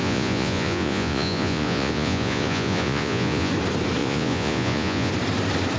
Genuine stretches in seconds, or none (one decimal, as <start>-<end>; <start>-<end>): 3.5-4.0; 5.1-5.8